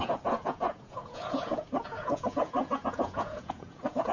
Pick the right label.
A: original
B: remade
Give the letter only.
B